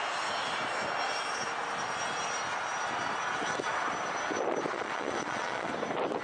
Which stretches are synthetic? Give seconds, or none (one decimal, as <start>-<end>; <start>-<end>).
4.7-5.7